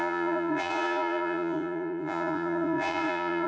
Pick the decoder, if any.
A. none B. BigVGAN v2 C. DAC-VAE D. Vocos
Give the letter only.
D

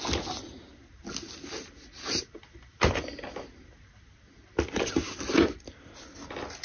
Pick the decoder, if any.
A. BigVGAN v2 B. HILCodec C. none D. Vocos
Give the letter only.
C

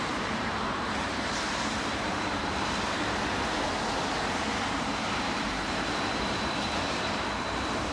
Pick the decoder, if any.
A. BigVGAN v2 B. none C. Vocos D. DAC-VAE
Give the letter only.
A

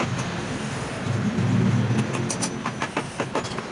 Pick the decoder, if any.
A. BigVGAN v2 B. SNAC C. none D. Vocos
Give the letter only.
C